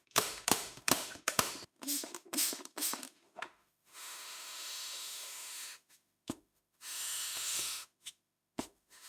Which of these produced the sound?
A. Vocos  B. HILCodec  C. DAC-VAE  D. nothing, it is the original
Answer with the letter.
C